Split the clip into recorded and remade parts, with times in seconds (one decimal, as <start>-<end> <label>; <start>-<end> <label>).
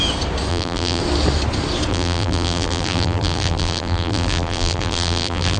0.0-0.5 recorded; 0.5-1.0 remade; 1.0-1.9 recorded; 1.9-5.6 remade